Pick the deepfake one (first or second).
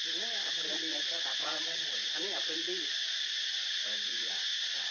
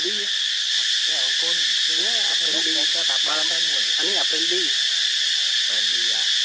first